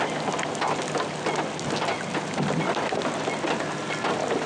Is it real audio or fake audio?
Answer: real